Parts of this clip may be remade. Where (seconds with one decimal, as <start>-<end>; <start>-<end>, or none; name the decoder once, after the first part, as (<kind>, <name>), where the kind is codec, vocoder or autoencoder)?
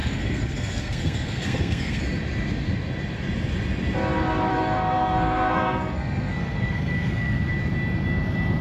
0.0-2.0 (codec, SNAC); 4.5-7.5